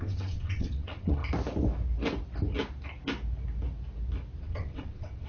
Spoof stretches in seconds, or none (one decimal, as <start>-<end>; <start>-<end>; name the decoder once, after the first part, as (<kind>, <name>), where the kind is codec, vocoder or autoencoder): 0.0-1.2 (vocoder, WaveNeXt); 4.4-5.3